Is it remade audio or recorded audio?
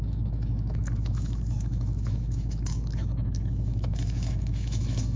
remade